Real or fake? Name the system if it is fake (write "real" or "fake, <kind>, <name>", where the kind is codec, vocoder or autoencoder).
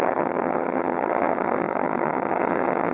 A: fake, vocoder, HiFi-GAN